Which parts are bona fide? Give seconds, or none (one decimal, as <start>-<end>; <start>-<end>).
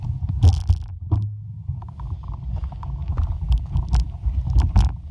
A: 0.0-5.1